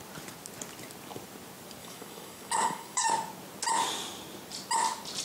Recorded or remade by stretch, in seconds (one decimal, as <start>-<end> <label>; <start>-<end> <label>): 0.0-1.8 recorded; 1.8-3.1 remade; 3.1-5.2 recorded